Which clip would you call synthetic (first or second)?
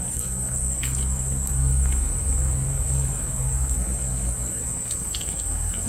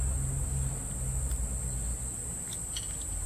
first